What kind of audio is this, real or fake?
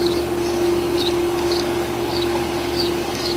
fake